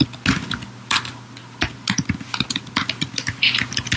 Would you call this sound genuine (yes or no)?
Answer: yes